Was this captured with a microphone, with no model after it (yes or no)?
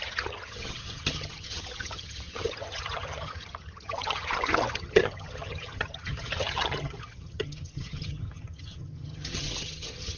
no